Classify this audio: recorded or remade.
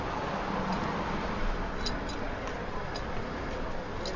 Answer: recorded